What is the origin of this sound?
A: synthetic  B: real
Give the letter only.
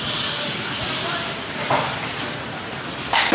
B